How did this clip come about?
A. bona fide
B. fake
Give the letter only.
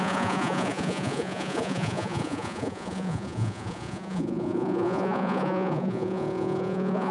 B